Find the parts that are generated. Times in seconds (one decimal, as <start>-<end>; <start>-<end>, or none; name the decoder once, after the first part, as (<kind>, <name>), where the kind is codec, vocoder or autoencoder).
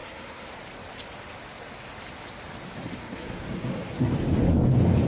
0.0-0.5 (codec, SNAC); 3.0-4.1